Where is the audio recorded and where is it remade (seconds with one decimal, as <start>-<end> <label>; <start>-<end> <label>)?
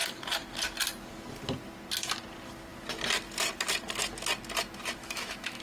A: 0.0-5.0 recorded; 5.0-5.6 remade